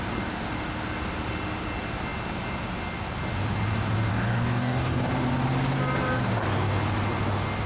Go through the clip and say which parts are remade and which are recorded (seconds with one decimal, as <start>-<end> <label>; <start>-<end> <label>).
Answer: 0.0-4.1 recorded; 4.1-5.1 remade; 5.1-7.7 recorded